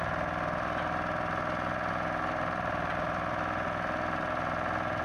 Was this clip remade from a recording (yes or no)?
no